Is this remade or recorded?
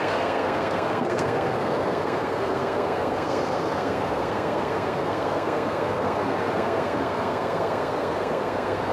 remade